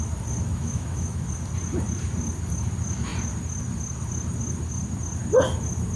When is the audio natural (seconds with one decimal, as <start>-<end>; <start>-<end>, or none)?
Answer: 0.0-0.5; 1.3-6.0